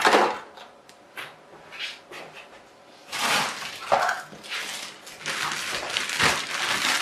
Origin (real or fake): real